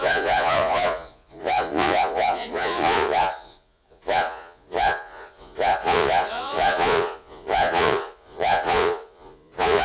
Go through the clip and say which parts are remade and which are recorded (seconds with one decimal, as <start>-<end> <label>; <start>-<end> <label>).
0.0-9.8 remade